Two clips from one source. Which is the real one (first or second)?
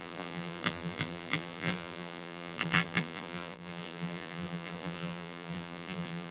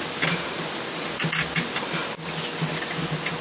second